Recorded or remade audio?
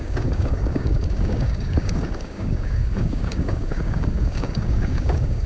remade